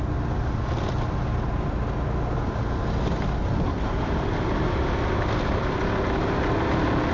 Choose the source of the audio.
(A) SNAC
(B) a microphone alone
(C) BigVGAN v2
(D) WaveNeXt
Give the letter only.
B